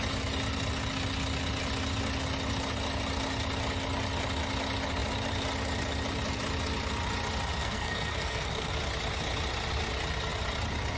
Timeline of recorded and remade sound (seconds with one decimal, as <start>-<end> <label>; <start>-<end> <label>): 0.0-7.6 recorded; 7.6-8.7 remade; 8.7-11.0 recorded